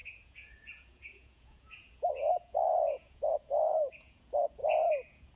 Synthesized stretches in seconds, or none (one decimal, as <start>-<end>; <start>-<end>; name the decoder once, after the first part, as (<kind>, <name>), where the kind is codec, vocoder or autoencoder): 0.0-5.4 (vocoder, Vocos)